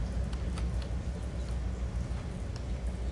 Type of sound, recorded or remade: recorded